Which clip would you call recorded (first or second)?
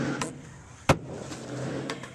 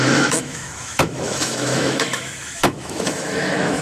first